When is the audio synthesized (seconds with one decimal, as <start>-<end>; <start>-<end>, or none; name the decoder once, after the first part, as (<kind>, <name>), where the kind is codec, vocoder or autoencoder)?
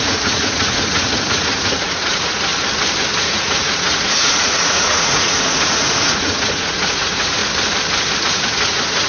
0.0-2.5 (vocoder, Vocos); 3.2-7.4; 8.2-9.1